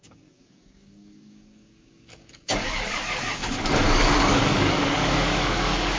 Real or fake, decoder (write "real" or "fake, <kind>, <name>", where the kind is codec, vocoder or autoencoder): fake, codec, DAC